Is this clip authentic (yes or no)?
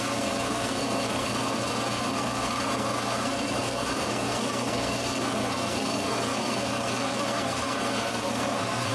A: no